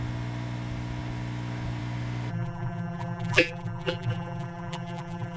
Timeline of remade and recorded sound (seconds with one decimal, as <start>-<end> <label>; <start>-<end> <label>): 0.0-2.3 recorded; 2.3-5.4 remade